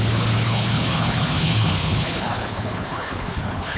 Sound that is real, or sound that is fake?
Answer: fake